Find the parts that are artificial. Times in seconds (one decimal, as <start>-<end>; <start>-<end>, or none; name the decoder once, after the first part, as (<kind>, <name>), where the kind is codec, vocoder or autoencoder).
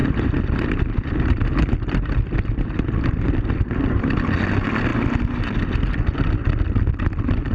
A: 0.0-4.2 (vocoder, BigVGAN v2)